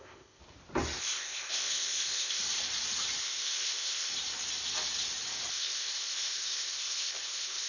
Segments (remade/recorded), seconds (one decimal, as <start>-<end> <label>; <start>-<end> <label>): 0.0-0.4 remade; 0.4-1.0 recorded; 1.0-2.4 remade; 2.4-3.2 recorded; 3.2-4.1 remade; 4.1-5.5 recorded; 5.5-7.7 remade